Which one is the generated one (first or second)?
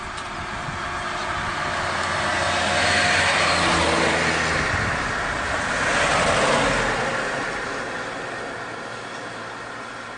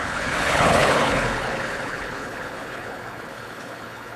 second